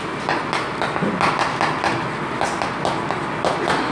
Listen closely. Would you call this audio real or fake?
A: real